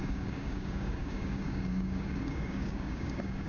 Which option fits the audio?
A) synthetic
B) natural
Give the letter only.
A